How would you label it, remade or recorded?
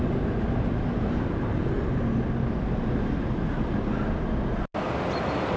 recorded